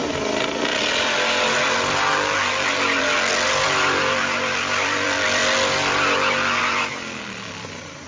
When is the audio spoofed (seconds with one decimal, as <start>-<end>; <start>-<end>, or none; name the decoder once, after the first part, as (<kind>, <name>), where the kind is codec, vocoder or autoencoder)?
3.0-5.4 (vocoder, BigVGAN v2); 6.6-8.1